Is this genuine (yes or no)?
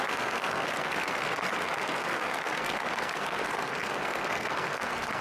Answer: no